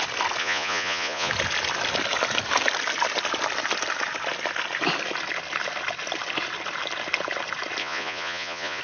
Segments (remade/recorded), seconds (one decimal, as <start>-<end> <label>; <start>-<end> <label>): 0.0-0.4 recorded; 0.4-1.3 remade; 1.3-7.8 recorded; 7.8-8.8 remade